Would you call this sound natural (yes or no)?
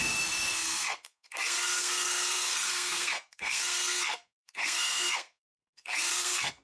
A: no